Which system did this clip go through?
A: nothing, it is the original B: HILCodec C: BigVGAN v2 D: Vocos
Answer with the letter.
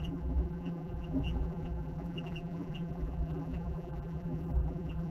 C